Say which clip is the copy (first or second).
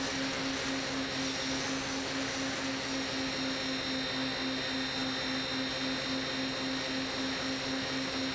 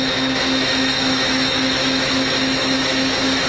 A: second